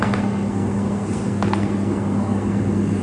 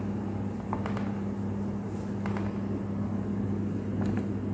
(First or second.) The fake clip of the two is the first